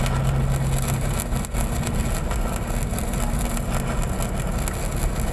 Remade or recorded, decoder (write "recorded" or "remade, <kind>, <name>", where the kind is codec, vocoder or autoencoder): recorded